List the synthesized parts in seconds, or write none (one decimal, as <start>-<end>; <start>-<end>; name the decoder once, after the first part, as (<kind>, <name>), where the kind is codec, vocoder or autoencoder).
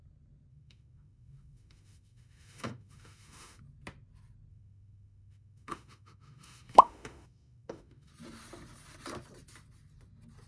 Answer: 0.5-3.6 (autoencoder, DAC-VAE); 4.5-8.1